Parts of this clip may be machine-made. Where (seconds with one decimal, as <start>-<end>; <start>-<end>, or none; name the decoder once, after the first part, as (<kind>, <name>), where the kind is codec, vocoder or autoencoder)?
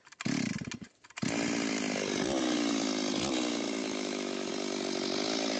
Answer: 3.8-4.5 (autoencoder, DAC-VAE)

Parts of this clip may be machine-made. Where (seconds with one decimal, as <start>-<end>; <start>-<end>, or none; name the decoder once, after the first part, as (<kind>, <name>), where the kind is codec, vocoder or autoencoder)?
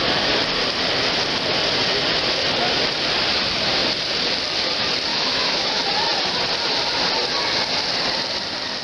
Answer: 5.1-5.8 (autoencoder, DAC-VAE)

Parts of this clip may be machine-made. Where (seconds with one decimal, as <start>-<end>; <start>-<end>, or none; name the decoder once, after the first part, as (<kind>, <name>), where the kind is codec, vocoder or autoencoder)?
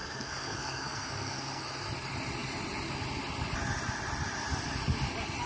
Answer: 0.0-1.6 (codec, SNAC)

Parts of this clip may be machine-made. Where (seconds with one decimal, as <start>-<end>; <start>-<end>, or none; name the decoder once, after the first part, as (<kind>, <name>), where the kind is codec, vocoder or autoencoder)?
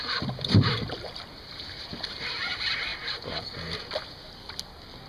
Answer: 1.3-2.3 (vocoder, BigVGAN v2)